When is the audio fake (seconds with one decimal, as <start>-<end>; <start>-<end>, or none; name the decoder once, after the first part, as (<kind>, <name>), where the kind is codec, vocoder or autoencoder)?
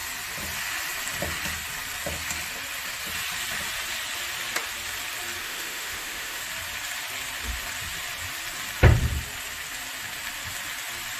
5.4-6.4 (autoencoder, DAC-VAE)